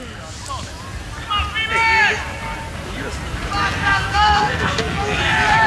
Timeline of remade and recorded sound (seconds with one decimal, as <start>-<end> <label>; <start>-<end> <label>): 0.0-3.8 recorded; 3.8-5.2 remade; 5.2-5.7 recorded

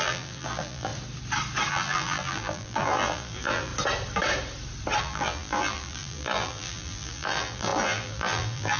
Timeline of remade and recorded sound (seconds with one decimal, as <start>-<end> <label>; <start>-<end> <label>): 0.0-0.9 remade; 0.9-1.7 recorded; 1.7-3.7 remade; 3.7-5.0 recorded; 5.0-8.8 remade

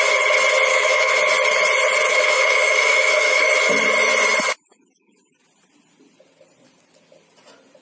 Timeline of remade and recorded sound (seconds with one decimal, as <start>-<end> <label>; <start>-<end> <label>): 0.0-0.7 recorded; 0.7-1.2 remade; 1.2-2.1 recorded; 2.1-3.5 remade; 3.5-7.8 recorded

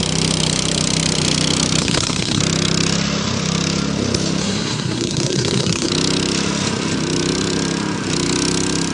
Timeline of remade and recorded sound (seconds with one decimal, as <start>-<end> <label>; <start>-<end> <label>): 0.0-1.8 recorded; 1.8-2.4 remade; 2.4-4.4 recorded; 4.4-5.9 remade; 5.9-8.9 recorded

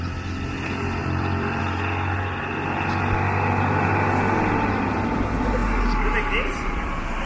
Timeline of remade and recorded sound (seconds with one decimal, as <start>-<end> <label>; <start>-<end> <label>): 0.0-1.0 recorded; 1.0-1.6 remade; 1.6-7.3 recorded

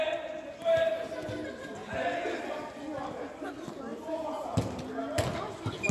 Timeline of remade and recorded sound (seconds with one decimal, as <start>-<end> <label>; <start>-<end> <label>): 0.0-5.9 recorded

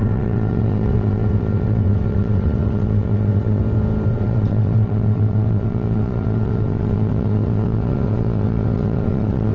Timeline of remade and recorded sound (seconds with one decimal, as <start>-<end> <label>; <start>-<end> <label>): 0.0-3.6 remade; 3.6-4.1 recorded; 4.1-9.5 remade

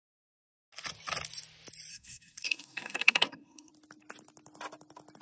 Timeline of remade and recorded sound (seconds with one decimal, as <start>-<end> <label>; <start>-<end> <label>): 0.0-1.9 recorded; 1.9-3.7 remade; 3.7-5.2 recorded